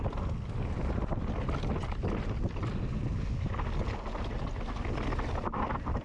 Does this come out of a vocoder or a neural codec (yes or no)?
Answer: no